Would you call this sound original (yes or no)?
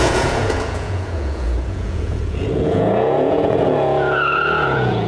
no